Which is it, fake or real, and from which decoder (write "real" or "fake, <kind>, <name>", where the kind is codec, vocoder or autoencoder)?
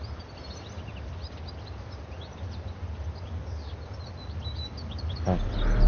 real